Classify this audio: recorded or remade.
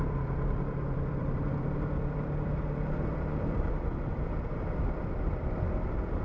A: remade